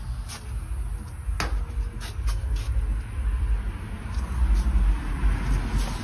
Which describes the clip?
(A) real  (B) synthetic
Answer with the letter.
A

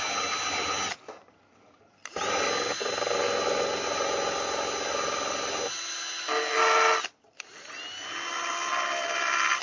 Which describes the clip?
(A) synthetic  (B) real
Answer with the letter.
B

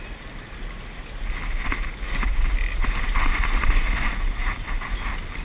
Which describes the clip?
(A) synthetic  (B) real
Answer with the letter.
B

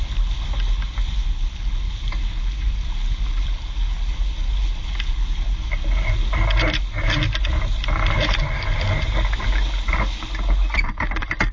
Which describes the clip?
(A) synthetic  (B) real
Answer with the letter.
B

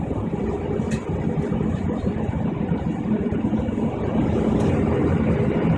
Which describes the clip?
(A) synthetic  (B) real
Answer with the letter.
A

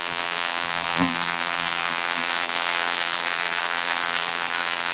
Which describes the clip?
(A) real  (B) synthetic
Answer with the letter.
B